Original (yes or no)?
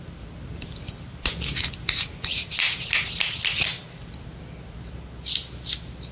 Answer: yes